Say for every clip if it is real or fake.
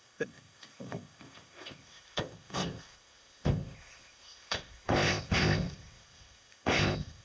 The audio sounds fake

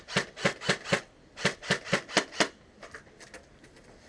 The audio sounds real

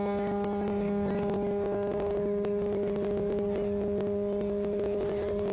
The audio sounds real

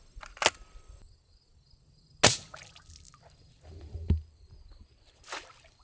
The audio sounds real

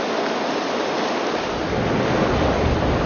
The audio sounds real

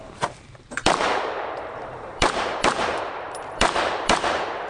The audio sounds fake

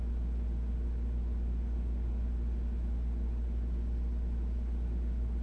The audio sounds real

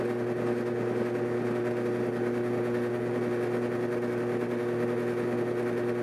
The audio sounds real